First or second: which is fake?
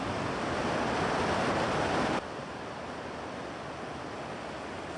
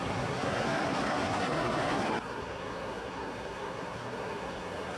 second